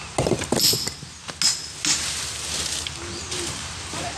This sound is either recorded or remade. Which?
recorded